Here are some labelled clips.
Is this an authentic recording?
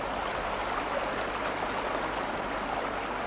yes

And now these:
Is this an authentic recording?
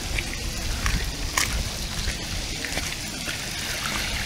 yes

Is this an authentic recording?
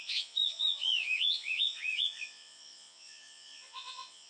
no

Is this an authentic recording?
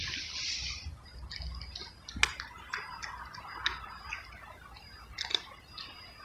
yes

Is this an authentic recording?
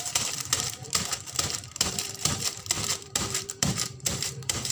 no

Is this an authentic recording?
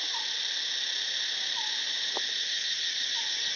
yes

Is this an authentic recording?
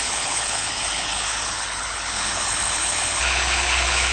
no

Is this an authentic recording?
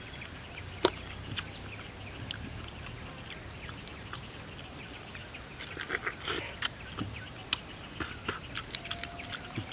yes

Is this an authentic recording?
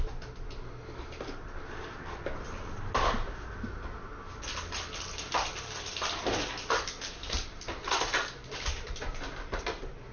yes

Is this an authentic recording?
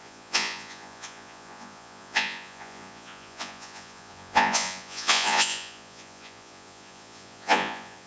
no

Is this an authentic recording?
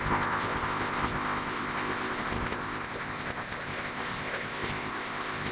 no